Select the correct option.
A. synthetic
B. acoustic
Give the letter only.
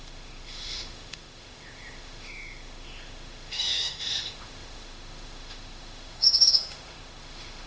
A